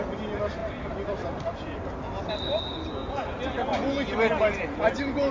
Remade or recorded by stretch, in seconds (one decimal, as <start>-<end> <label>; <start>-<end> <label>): 0.0-5.3 recorded